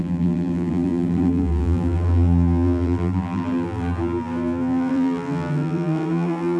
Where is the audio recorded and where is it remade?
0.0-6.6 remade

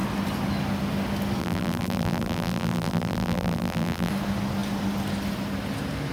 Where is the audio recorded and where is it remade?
0.0-1.4 recorded; 1.4-4.1 remade; 4.1-6.1 recorded

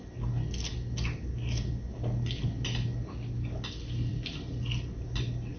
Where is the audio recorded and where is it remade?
0.0-5.6 recorded

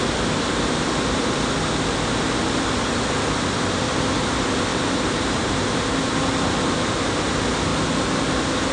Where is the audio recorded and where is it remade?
0.0-4.7 recorded; 4.7-5.8 remade; 5.8-8.7 recorded

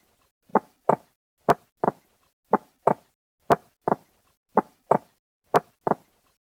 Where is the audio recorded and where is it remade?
0.0-0.5 recorded; 0.5-1.2 remade; 1.2-3.6 recorded; 3.6-5.8 remade; 5.8-6.4 recorded

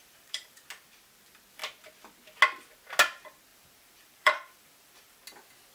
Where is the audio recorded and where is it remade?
0.0-0.6 remade; 0.6-3.5 recorded; 3.5-5.2 remade; 5.2-5.7 recorded

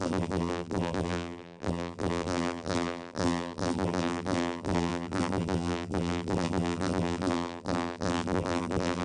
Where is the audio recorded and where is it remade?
0.0-9.0 remade

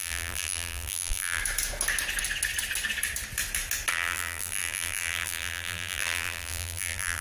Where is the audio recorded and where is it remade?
0.0-1.4 remade; 1.4-3.9 recorded; 3.9-7.2 remade